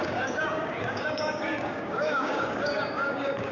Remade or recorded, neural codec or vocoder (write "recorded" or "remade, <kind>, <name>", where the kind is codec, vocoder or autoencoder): remade, codec, DAC